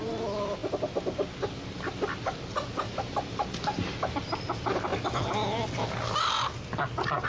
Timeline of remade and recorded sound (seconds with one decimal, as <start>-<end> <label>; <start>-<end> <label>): 0.0-7.3 recorded